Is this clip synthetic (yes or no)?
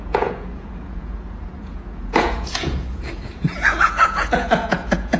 yes